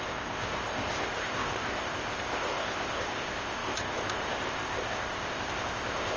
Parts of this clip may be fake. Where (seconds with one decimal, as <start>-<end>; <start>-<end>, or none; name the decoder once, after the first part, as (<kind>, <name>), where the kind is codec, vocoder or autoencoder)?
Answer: 0.0-6.2 (codec, ZipCodec)